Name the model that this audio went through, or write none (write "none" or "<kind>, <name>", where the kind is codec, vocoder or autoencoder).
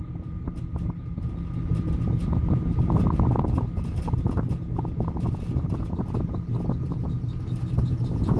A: none